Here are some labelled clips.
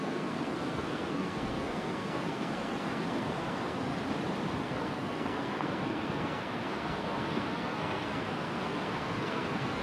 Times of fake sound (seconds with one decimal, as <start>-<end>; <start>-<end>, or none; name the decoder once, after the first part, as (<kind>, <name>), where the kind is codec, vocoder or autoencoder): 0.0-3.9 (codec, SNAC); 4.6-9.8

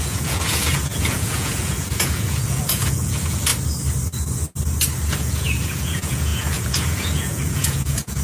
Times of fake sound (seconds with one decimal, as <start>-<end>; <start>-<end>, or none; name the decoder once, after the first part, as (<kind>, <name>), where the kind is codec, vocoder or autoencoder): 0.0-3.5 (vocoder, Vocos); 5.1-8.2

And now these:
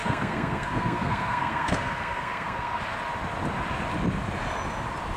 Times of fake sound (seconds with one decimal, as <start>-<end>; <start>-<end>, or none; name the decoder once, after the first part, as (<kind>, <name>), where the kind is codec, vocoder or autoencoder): 0.0-2.8 (codec, SNAC)

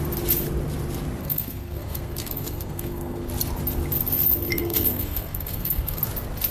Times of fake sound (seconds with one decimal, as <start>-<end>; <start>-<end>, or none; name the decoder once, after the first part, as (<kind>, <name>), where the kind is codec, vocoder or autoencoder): 1.2-3.3 (codec, SNAC); 4.5-6.0